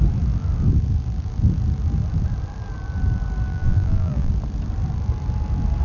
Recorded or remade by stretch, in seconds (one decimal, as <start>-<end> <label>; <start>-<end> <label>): 0.0-3.5 recorded; 3.5-4.3 remade; 4.3-5.8 recorded